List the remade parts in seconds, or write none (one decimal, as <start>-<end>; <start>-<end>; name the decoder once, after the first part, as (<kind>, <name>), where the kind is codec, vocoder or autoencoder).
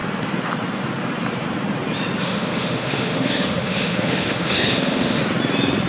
2.2-5.2 (autoencoder, DAC-VAE)